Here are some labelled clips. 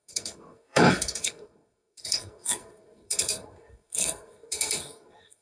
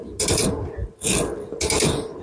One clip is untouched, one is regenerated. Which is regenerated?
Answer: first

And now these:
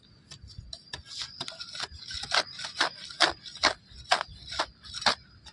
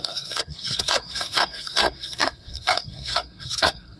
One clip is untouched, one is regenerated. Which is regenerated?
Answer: second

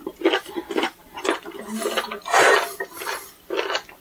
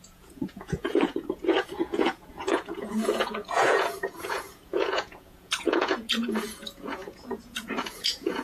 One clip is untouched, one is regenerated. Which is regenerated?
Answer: second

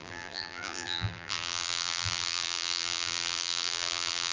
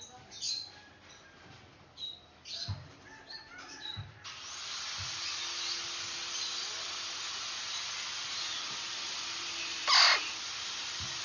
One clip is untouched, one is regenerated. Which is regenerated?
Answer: first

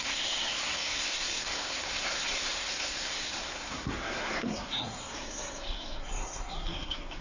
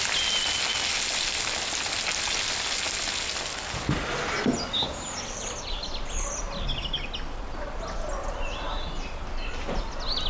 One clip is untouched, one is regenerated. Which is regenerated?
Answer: first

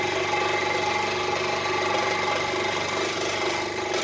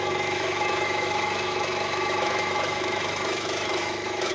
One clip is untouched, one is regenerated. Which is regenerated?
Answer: second